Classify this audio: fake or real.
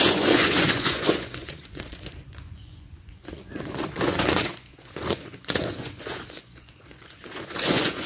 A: fake